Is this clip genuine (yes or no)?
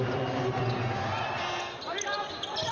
yes